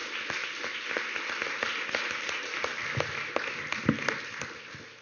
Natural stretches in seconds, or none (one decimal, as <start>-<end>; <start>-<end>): 0.0-1.9; 2.7-5.0